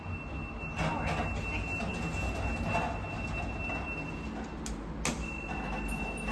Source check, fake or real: real